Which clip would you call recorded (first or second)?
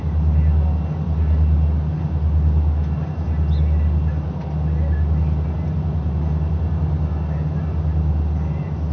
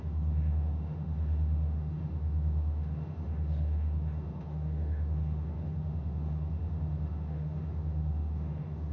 first